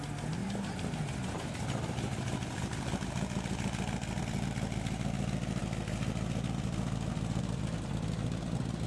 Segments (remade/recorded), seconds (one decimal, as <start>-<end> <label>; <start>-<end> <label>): 0.0-8.9 recorded